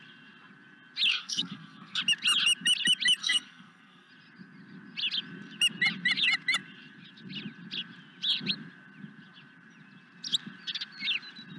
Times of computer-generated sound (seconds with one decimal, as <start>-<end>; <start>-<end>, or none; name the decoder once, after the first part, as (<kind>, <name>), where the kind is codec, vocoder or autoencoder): 1.1-2.0 (codec, SNAC); 3.2-4.1